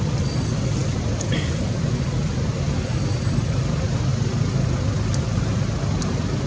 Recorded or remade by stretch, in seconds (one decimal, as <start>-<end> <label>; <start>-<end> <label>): 0.0-6.5 recorded